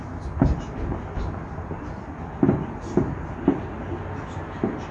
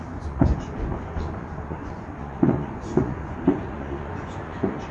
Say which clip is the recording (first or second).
first